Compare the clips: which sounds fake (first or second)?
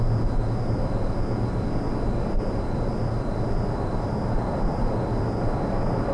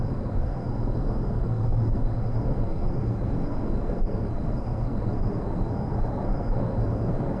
second